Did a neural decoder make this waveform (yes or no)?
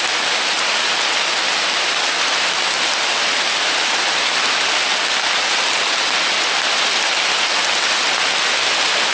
no